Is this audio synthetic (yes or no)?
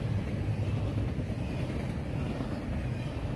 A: no